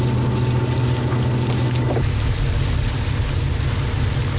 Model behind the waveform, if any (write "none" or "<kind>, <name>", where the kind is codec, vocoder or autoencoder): none